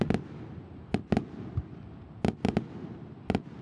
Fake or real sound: real